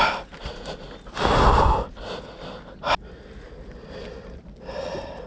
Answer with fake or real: real